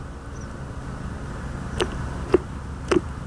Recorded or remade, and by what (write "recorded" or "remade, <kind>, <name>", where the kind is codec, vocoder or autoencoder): recorded